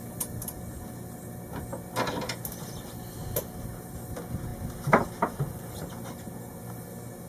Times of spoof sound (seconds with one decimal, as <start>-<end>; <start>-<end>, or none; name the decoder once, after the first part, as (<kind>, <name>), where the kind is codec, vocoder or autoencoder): none